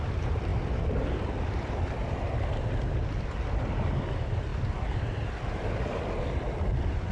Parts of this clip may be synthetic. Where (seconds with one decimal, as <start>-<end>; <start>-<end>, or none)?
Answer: none